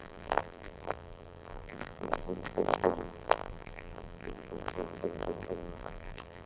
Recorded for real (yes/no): no